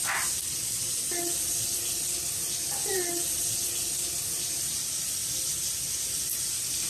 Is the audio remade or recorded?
recorded